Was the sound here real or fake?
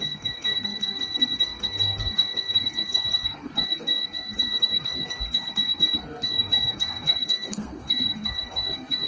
fake